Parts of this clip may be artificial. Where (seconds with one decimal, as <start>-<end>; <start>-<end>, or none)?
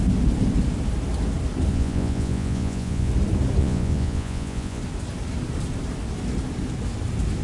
1.7-3.1; 3.6-4.8